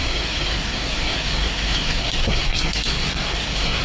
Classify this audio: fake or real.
fake